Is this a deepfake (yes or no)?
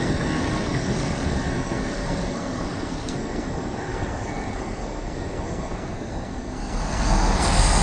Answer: yes